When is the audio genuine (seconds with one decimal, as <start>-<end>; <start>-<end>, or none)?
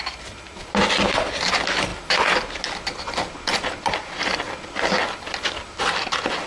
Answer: 0.0-6.5